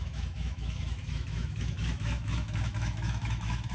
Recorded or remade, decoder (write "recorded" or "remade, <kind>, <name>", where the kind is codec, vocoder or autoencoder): remade, autoencoder, DAC-VAE